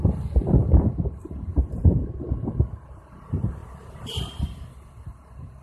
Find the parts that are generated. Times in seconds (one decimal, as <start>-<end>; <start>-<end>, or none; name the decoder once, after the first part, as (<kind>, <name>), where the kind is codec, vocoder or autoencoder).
1.2-1.9 (vocoder, BigVGAN v2); 3.6-4.7